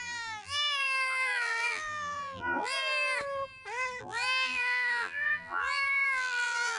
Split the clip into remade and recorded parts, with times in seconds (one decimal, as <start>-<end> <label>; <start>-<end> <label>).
0.0-2.9 remade; 2.9-4.0 recorded; 4.0-6.8 remade